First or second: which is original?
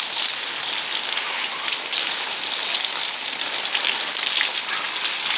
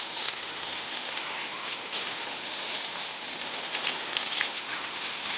first